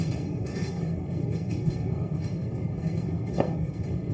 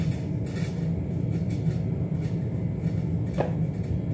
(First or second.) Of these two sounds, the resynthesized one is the first